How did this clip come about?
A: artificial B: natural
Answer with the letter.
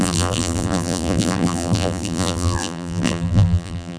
A